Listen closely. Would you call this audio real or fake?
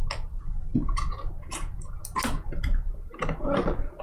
real